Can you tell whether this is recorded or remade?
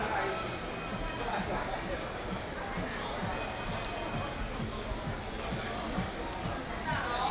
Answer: recorded